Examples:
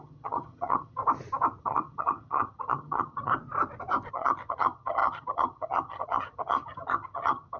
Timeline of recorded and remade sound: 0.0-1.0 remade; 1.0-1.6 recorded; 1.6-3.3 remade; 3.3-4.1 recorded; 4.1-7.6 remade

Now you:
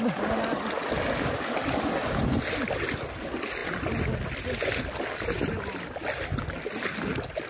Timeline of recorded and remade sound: 0.0-7.5 recorded

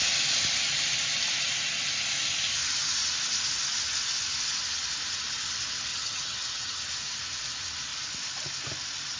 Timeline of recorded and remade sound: 0.0-5.9 recorded; 5.9-6.8 remade; 6.8-9.2 recorded

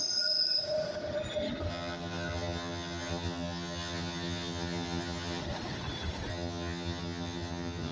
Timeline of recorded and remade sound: 0.0-1.7 recorded; 1.7-5.4 remade; 5.4-6.3 recorded; 6.3-7.9 remade